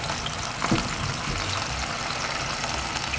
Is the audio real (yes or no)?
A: yes